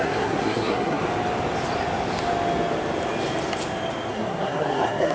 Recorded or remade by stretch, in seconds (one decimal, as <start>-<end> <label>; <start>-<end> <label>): 0.0-1.0 remade; 1.0-4.1 recorded; 4.1-5.1 remade